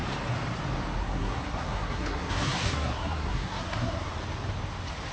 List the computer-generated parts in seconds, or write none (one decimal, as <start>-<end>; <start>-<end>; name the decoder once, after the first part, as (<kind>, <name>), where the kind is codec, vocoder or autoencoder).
1.0-4.1 (codec, SNAC)